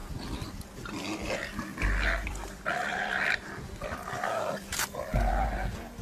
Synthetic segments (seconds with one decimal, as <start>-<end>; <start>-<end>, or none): 0.0-0.6; 1.7-5.3